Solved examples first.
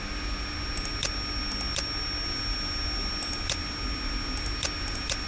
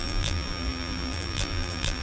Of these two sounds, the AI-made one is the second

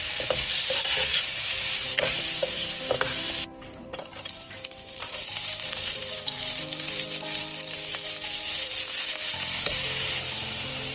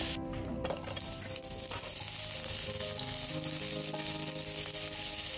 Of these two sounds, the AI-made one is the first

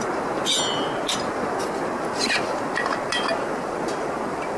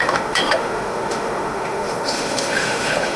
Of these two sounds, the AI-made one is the second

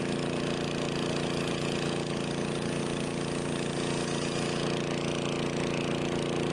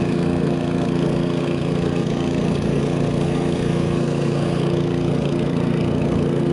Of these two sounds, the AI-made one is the second